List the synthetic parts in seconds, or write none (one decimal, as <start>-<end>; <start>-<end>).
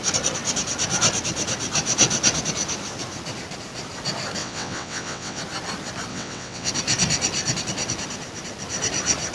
4.4-5.4; 6.1-6.7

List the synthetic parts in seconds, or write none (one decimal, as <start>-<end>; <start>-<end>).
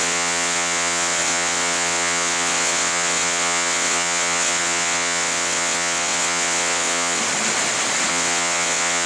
0.0-7.2; 8.1-9.1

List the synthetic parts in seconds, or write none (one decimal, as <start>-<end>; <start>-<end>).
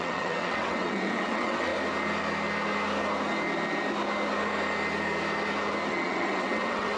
0.0-1.7; 5.9-7.0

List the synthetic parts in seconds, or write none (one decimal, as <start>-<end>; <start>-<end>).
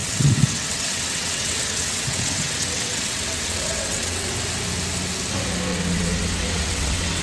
0.0-4.3; 5.7-7.2